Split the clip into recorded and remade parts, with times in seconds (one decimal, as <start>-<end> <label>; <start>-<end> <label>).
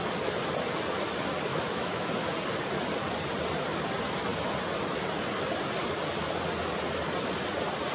0.0-1.5 recorded; 1.5-2.1 remade; 2.1-7.9 recorded